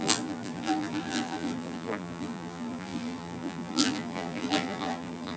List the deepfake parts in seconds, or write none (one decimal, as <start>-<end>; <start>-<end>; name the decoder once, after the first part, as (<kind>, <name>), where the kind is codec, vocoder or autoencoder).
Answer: 0.0-5.4 (vocoder, BigVGAN v2)